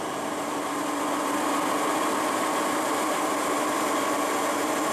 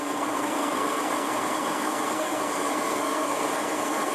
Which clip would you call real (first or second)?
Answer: first